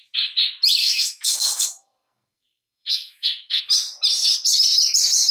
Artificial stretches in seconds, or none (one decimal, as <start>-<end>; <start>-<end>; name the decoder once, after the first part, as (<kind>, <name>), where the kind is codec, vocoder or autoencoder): 0.8-3.6 (codec, SNAC)